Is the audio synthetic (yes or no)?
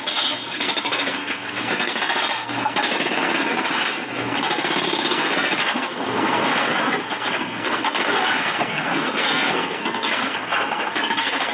yes